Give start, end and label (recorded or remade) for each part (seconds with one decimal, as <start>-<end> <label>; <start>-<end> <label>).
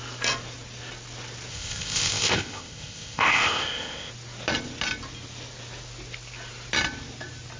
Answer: 0.0-1.5 recorded; 1.5-4.1 remade; 4.1-7.6 recorded